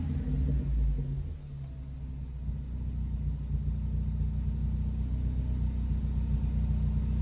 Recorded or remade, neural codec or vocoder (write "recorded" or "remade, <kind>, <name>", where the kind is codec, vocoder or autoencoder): recorded